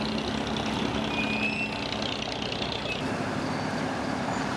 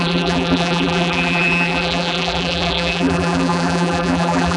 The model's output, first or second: second